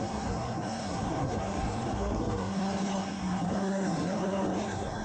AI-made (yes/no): yes